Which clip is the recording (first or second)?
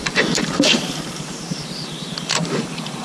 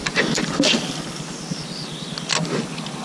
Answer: second